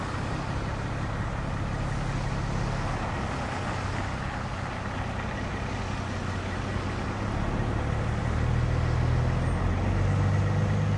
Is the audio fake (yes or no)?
no